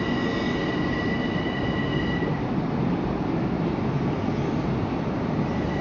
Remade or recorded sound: recorded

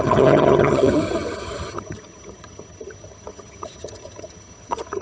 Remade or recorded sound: remade